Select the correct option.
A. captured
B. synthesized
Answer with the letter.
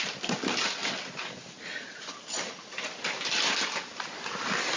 A